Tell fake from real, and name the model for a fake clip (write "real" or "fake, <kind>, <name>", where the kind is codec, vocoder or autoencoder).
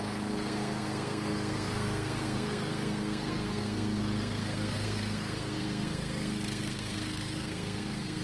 fake, codec, SNAC